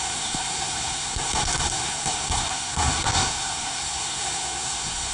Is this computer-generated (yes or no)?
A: yes